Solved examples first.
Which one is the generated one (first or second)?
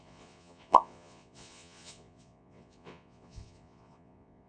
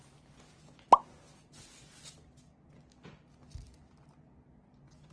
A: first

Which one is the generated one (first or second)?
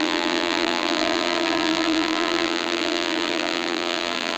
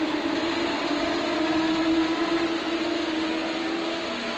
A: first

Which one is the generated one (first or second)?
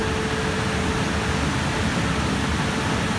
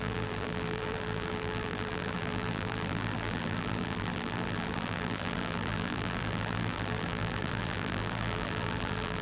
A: second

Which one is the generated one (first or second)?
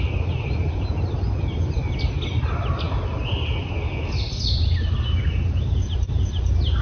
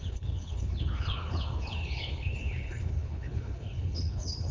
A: second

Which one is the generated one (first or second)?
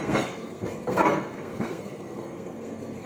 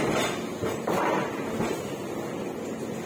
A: first